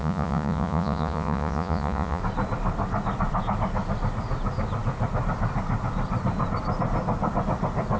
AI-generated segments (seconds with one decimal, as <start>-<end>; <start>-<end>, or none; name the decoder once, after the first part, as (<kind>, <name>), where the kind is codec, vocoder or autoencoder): 0.0-2.2 (vocoder, Vocos)